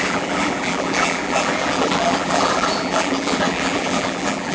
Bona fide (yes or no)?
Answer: no